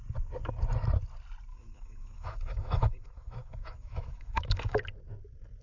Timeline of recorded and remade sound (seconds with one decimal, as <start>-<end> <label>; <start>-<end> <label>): 0.0-1.5 recorded; 1.5-4.8 remade; 4.8-5.6 recorded